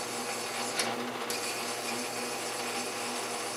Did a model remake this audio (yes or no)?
no